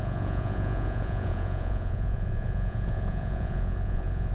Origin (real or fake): fake